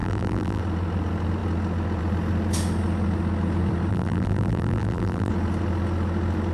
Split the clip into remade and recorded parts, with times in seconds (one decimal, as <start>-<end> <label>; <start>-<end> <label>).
0.0-0.6 remade; 0.6-3.9 recorded; 3.9-5.3 remade; 5.3-6.5 recorded